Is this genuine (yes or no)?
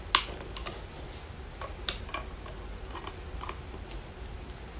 yes